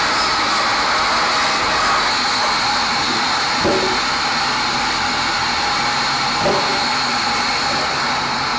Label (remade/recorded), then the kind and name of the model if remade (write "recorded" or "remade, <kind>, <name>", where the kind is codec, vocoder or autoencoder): recorded